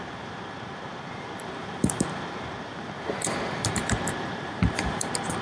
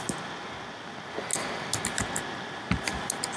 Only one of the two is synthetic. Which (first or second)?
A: first